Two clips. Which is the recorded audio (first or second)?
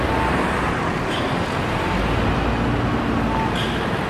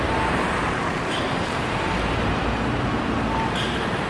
first